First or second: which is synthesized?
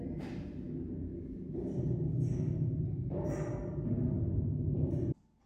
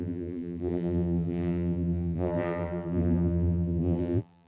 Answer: second